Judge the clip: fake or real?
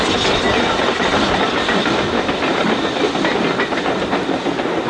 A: real